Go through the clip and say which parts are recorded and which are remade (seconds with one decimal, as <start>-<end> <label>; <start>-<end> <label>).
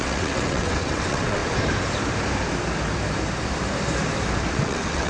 0.0-1.4 remade; 1.4-4.5 recorded; 4.5-5.1 remade